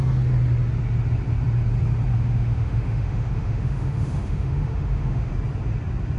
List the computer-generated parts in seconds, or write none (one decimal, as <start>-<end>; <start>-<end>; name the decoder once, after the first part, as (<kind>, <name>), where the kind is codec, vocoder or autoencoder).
2.1-5.3 (autoencoder, DAC-VAE)